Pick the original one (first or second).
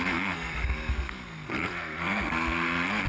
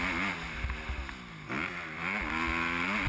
second